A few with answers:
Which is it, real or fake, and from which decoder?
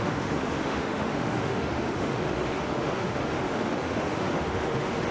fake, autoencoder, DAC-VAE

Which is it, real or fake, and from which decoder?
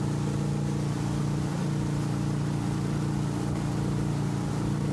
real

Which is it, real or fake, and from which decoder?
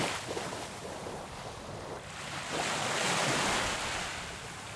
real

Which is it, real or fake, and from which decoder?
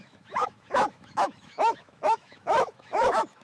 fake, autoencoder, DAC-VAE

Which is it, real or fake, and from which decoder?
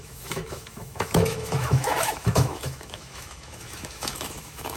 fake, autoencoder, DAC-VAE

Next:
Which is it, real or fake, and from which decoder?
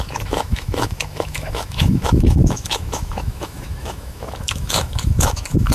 fake, autoencoder, DAC-VAE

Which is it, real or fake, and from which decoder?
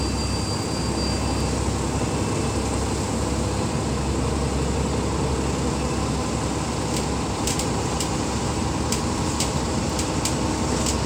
real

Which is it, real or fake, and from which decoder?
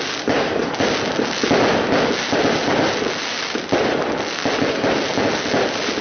real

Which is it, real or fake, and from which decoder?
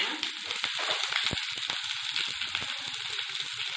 real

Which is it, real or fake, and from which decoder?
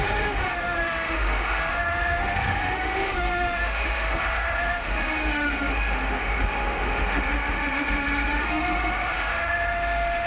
fake, autoencoder, DAC-VAE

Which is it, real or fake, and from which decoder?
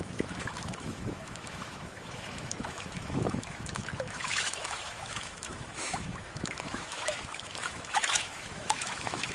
fake, autoencoder, DAC-VAE